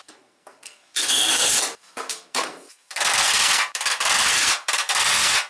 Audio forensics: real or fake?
fake